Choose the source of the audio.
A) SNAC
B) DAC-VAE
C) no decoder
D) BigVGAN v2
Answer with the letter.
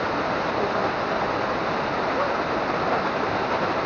C